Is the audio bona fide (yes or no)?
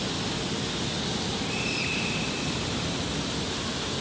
yes